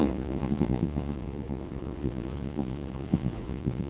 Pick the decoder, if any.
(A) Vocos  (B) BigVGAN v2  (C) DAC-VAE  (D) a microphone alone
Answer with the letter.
A